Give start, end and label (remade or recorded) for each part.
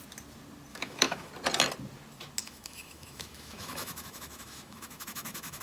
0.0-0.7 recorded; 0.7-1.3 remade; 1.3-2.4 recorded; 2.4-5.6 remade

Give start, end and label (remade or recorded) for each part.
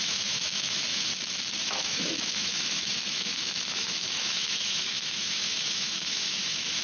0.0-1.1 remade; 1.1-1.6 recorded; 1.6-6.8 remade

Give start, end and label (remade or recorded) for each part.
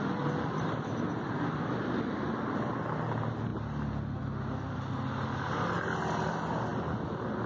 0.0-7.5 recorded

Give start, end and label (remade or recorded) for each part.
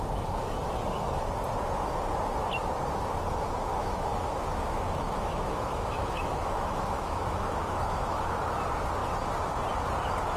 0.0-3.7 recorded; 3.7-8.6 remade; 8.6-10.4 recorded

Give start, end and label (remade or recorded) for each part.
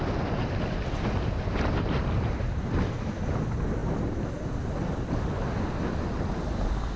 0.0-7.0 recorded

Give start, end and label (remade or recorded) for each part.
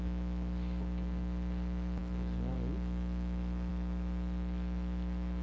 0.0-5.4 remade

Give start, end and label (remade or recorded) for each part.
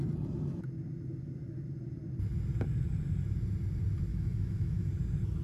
0.0-4.1 recorded; 4.1-4.9 remade; 4.9-5.4 recorded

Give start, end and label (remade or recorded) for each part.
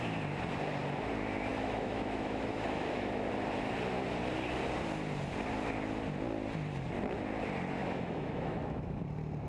0.0-1.5 recorded; 1.5-3.3 remade; 3.3-7.8 recorded; 7.8-9.0 remade; 9.0-9.5 recorded